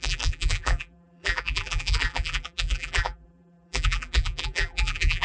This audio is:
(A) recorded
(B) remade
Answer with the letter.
B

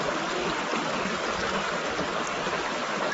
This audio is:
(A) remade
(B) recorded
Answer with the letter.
B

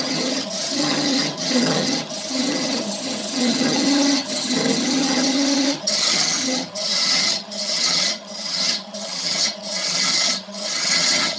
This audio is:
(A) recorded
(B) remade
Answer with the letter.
B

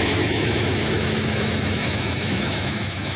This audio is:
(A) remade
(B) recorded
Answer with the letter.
A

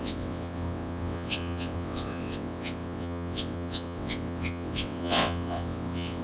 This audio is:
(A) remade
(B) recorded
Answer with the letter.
A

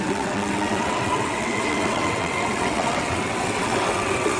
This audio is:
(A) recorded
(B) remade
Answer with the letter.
B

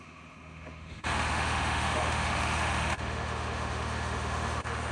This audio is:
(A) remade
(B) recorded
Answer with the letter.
A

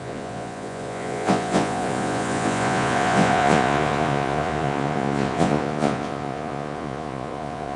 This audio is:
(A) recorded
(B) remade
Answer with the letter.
B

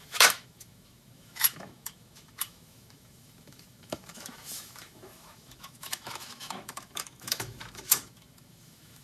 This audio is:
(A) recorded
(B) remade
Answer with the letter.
B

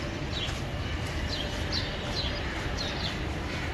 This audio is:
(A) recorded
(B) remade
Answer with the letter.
B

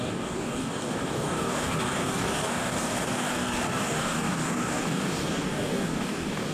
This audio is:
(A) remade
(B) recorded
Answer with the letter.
A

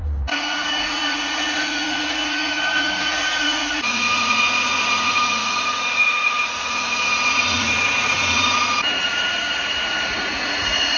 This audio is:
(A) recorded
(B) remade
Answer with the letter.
B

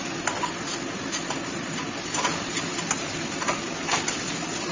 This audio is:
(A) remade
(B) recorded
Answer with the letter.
B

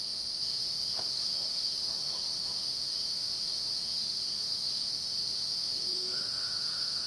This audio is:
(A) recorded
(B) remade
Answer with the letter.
B